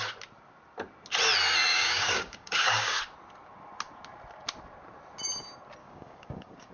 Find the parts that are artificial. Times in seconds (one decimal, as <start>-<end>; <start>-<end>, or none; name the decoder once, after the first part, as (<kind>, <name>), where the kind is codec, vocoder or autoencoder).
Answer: 1.7-3.0 (codec, DAC); 5.8-6.7